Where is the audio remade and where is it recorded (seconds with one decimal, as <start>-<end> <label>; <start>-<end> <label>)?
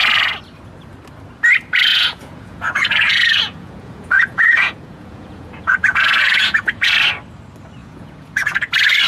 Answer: 0.0-1.9 recorded; 1.9-6.9 remade; 6.9-7.8 recorded; 7.8-8.7 remade; 8.7-9.1 recorded